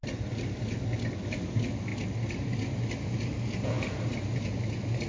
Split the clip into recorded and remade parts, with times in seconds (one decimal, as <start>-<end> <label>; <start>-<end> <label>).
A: 0.0-5.1 recorded